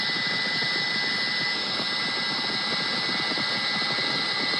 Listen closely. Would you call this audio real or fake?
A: real